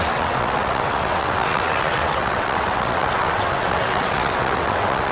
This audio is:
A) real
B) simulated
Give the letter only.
B